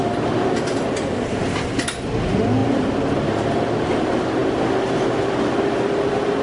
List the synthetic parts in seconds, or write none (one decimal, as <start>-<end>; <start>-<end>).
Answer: none